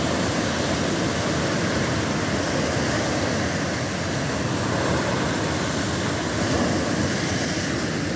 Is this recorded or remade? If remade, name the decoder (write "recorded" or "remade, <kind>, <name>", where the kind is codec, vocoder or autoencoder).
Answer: recorded